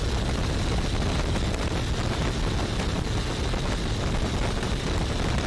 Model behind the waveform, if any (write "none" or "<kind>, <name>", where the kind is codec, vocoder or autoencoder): none